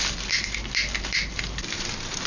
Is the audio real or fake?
real